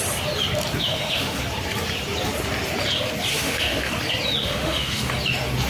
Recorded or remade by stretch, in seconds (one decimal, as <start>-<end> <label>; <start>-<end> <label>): 0.0-0.9 recorded; 0.9-1.4 remade; 1.4-3.3 recorded; 3.3-3.9 remade; 3.9-4.4 recorded; 4.4-5.1 remade; 5.1-5.7 recorded